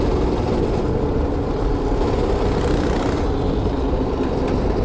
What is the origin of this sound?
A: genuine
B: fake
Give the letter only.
A